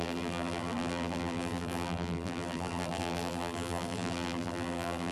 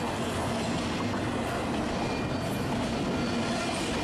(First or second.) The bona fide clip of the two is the second